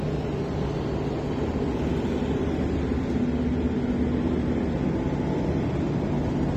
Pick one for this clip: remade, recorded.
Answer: recorded